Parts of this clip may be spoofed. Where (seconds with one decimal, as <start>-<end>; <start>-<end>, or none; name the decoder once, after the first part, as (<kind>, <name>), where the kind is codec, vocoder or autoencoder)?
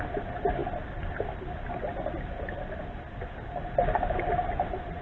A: none